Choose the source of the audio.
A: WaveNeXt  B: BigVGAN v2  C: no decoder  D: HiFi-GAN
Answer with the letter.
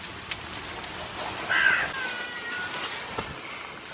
C